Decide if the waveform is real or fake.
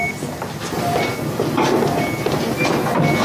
real